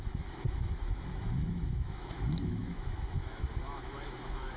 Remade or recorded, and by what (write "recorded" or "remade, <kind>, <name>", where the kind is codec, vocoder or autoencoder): remade, autoencoder, DAC-VAE